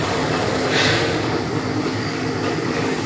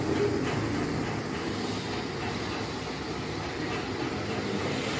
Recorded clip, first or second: second